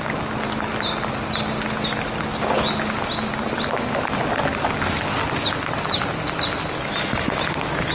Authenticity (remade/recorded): recorded